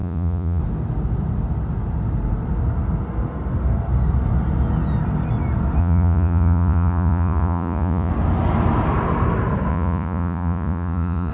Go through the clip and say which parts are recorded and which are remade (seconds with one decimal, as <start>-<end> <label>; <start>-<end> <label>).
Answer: 0.0-0.6 remade; 0.6-5.8 recorded; 5.8-8.1 remade; 8.1-9.7 recorded; 9.7-11.3 remade